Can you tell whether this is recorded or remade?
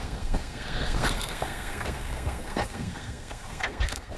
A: remade